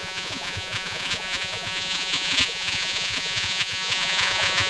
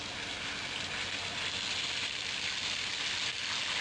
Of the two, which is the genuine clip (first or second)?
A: second